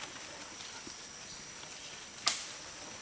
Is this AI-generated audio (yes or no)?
no